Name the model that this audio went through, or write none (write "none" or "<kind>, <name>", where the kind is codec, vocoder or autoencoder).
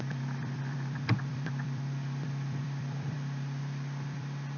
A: vocoder, BigVGAN v2